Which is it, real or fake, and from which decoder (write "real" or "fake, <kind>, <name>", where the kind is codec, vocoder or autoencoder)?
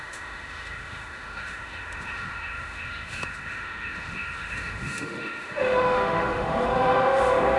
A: fake, autoencoder, DAC-VAE